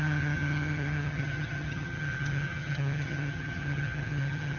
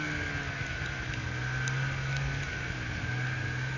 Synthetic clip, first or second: first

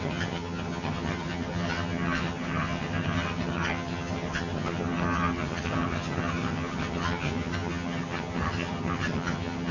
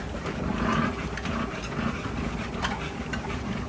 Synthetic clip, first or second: first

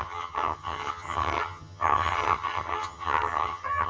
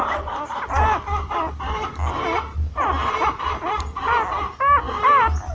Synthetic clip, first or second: first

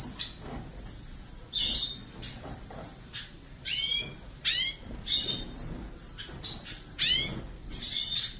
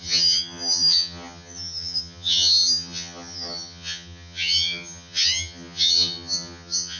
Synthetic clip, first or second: second